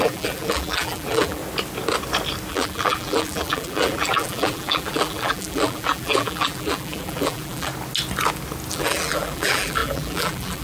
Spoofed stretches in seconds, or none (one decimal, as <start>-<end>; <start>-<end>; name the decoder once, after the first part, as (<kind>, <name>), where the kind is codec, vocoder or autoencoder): 0.0-1.4 (vocoder, BigVGAN v2); 2.5-7.7; 8.7-10.6